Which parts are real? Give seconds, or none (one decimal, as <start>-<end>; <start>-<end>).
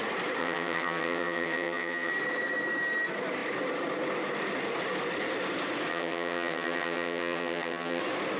0.0-0.4; 2.1-5.9; 8.0-8.4